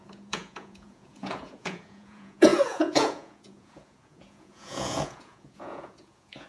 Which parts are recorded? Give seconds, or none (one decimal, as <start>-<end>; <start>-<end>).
none